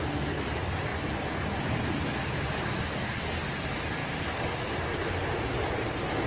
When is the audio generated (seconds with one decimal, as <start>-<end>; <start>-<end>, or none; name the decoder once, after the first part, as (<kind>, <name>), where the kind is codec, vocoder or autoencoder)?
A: none